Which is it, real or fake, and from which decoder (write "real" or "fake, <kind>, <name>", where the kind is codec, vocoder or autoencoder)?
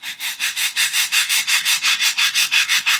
fake, autoencoder, DAC-VAE